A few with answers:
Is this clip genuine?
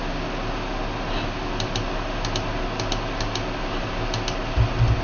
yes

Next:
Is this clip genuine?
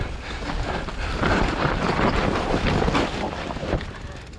no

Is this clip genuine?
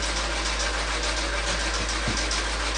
yes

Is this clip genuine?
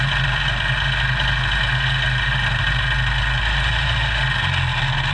yes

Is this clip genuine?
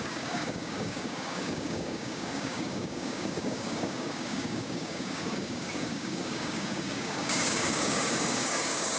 no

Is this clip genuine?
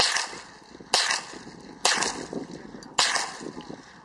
yes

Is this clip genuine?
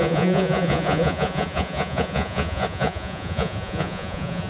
no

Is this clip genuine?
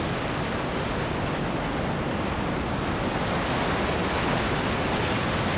yes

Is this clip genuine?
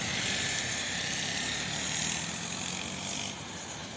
yes